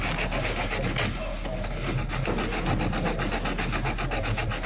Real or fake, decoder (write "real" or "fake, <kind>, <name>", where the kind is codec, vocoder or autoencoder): real